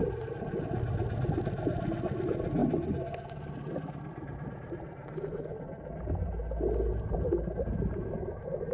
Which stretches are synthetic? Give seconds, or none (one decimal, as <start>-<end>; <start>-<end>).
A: none